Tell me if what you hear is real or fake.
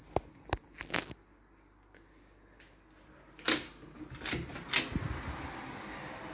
real